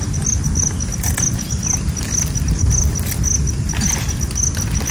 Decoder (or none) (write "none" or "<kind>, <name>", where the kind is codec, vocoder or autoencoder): none